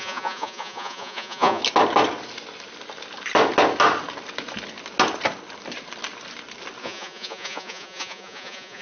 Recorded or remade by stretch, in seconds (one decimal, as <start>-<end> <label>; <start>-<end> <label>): 0.0-1.6 remade; 1.6-6.8 recorded; 6.8-8.8 remade